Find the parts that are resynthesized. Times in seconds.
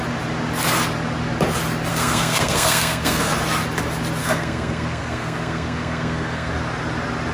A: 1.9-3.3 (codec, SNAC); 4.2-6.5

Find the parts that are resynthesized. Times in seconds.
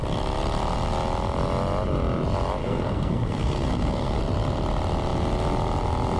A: 2.6-4.2 (codec, SNAC)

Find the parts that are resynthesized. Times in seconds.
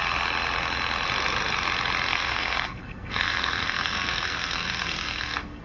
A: 2.1-5.6 (codec, SNAC)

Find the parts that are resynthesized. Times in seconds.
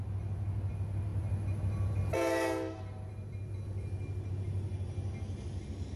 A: none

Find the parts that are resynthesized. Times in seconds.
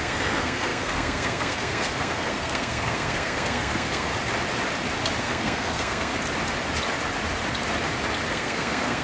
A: 0.0-4.1 (codec, SNAC); 5.2-6.1; 8.3-9.0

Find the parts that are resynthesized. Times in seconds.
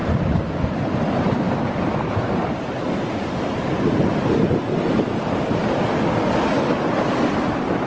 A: none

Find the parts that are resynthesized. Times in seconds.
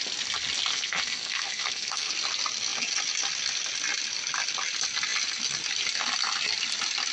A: 0.7-2.1 (codec, SNAC)